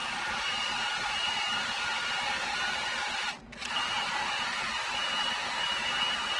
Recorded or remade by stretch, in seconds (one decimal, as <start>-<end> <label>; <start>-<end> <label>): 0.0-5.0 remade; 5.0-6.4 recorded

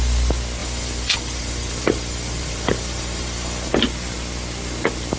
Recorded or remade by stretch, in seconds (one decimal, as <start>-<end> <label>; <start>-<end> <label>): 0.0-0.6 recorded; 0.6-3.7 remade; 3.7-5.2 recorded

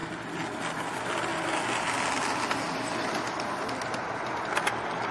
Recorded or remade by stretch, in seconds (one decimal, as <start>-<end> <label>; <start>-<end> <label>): 0.0-5.1 recorded

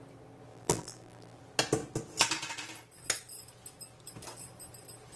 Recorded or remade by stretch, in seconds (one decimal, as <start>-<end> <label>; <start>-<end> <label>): 0.0-0.5 recorded; 0.5-1.4 remade; 1.4-5.2 recorded

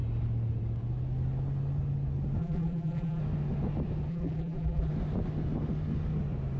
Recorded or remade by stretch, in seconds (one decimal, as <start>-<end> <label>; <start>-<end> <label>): 0.0-2.4 recorded; 2.4-3.2 remade; 3.2-4.1 recorded; 4.1-4.9 remade; 4.9-6.6 recorded

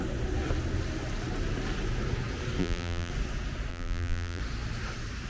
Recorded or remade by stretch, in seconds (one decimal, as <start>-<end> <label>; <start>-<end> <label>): 0.0-2.6 recorded; 2.6-3.1 remade; 3.1-3.7 recorded; 3.7-4.4 remade; 4.4-5.3 recorded

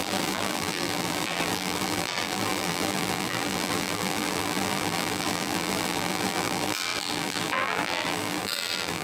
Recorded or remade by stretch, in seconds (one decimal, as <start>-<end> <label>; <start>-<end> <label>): 0.0-9.0 remade

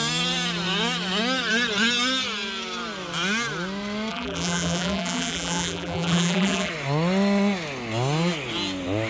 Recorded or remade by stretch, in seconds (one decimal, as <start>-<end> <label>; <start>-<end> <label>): 0.0-4.1 recorded; 4.1-6.7 remade; 6.7-9.1 recorded